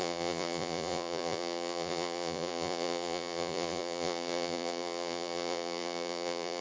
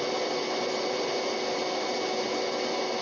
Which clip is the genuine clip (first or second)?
second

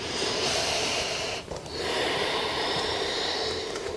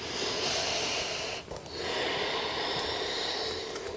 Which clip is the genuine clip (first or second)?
second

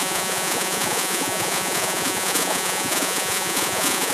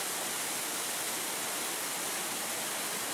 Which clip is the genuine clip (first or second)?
second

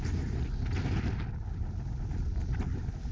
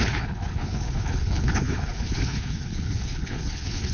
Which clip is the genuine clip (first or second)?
first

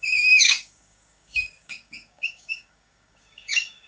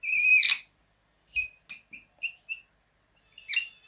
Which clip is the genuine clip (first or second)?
second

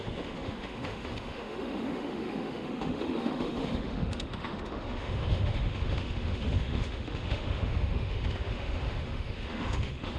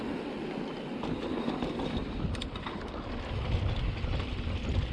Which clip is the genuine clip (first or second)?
second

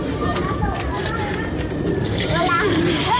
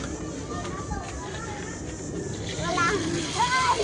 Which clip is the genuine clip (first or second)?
second